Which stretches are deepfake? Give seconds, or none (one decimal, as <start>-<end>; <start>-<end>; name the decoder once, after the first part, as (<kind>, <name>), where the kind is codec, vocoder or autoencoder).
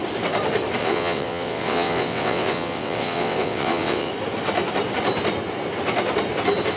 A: 0.8-4.1 (vocoder, WaveNeXt)